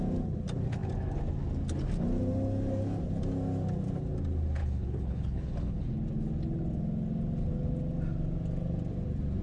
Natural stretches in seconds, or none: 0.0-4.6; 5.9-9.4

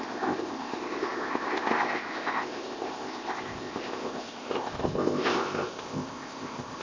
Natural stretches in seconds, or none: none

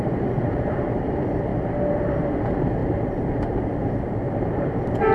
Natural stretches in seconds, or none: 1.5-2.4

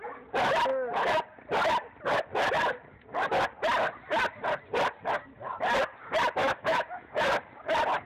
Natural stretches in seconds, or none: 0.0-6.4; 7.2-8.1